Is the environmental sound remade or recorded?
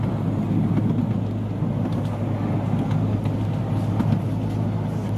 recorded